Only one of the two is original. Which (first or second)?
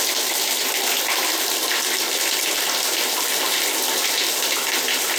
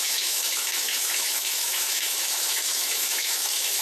first